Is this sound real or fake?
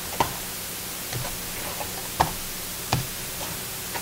real